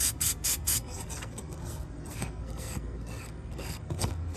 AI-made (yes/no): yes